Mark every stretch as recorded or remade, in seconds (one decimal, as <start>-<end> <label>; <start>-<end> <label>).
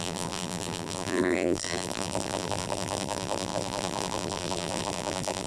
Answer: 0.0-5.5 remade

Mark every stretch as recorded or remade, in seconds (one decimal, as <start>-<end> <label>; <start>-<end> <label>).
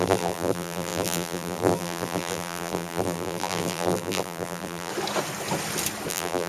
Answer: 0.0-4.9 remade; 4.9-6.1 recorded; 6.1-6.5 remade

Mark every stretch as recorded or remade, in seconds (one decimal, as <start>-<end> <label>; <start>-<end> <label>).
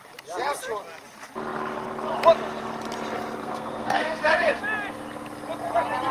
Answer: 0.0-3.4 recorded; 3.4-4.6 remade; 4.6-6.1 recorded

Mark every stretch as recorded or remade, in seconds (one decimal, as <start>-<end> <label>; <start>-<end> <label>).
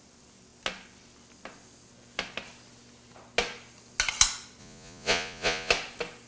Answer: 0.0-4.6 recorded; 4.6-5.7 remade; 5.7-6.3 recorded